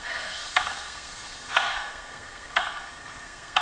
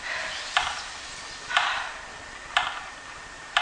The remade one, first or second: first